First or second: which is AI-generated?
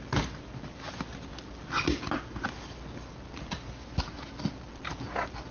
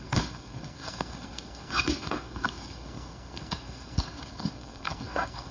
second